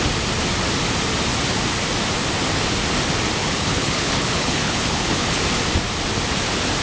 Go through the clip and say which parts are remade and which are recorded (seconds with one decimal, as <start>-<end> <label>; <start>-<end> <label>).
0.0-3.4 recorded; 3.4-5.4 remade; 5.4-6.8 recorded